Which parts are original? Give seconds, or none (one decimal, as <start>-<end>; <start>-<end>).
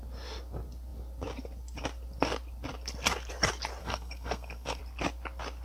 0.0-3.8; 4.8-5.6